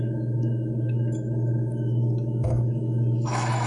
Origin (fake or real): fake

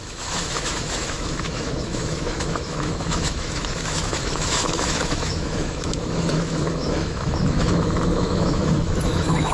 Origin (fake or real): fake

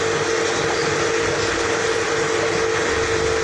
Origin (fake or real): real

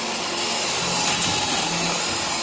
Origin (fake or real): real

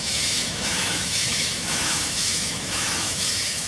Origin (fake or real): fake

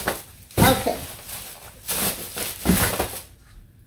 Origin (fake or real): real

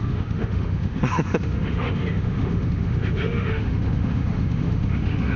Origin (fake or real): fake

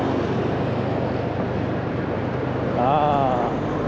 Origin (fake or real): real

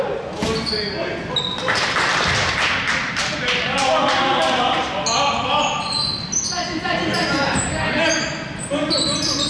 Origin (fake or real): real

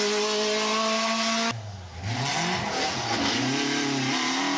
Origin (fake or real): real